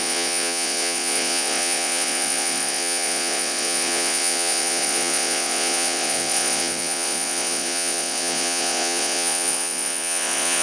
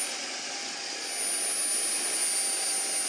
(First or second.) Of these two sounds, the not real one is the first